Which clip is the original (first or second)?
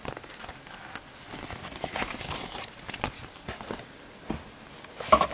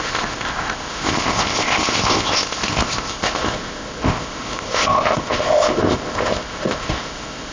first